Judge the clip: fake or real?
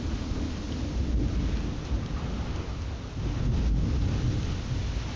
real